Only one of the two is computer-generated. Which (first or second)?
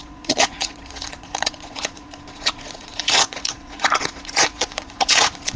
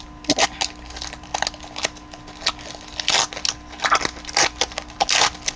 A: first